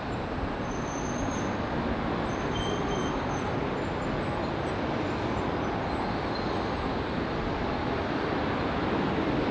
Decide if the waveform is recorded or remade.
recorded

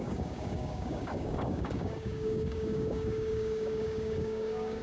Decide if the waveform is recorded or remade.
remade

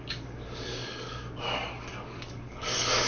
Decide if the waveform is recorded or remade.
remade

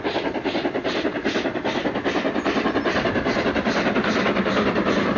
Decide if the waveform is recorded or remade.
recorded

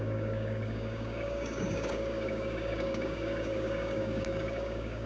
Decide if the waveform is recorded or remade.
remade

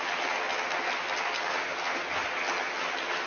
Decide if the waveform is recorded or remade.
recorded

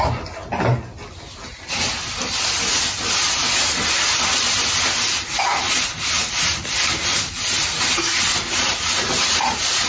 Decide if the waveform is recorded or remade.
recorded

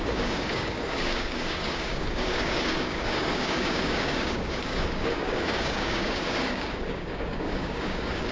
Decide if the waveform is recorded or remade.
remade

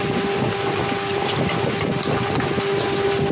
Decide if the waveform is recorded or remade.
recorded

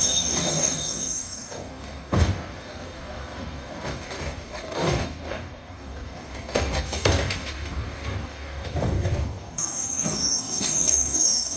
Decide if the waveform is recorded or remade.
remade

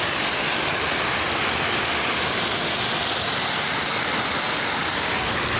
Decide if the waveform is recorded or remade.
recorded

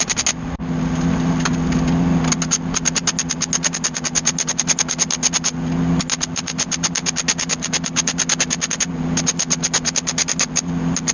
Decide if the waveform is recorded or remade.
recorded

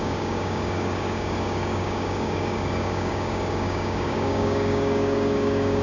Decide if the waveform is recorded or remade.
remade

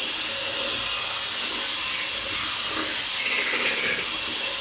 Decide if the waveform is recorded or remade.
recorded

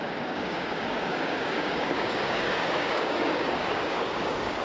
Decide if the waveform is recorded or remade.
remade